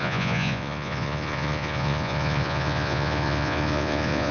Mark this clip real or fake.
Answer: fake